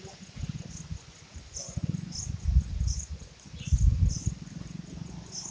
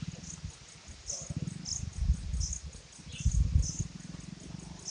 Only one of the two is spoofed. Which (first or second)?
first